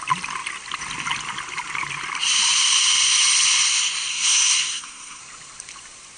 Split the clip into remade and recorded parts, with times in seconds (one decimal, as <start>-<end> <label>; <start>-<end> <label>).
0.0-4.1 recorded; 4.1-5.2 remade; 5.2-6.2 recorded